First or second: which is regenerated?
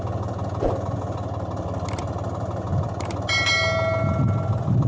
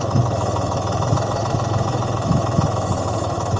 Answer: second